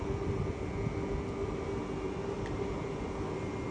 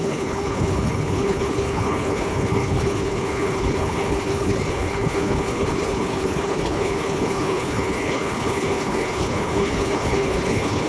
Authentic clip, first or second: first